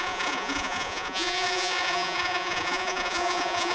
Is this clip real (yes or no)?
no